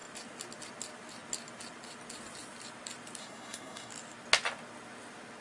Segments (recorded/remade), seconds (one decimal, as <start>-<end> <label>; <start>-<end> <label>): 0.0-3.2 recorded; 3.2-3.9 remade; 3.9-5.4 recorded